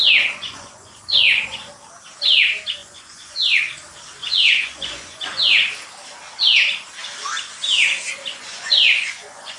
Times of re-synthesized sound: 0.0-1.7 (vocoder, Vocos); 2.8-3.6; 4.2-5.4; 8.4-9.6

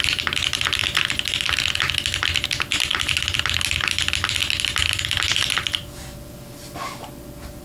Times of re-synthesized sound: none

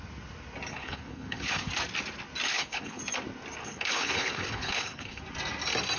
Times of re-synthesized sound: 0.7-1.7 (codec, HILCodec); 2.5-3.0; 3.6-5.2